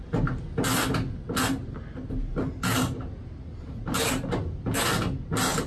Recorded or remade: recorded